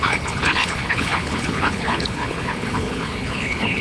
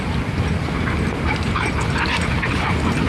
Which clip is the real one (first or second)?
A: second